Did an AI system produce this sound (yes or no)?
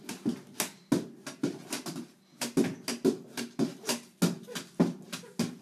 no